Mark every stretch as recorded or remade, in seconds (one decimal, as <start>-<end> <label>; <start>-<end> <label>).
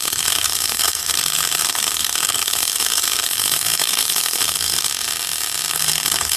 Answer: 0.0-4.9 remade; 4.9-5.7 recorded; 5.7-6.4 remade